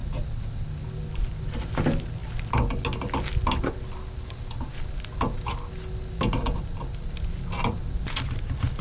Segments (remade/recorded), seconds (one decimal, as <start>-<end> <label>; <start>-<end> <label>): 0.0-8.8 recorded